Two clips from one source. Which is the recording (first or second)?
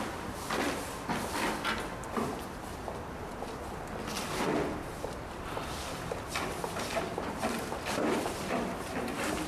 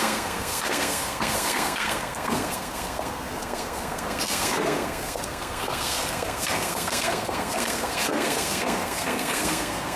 first